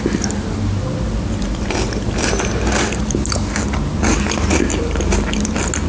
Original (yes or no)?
yes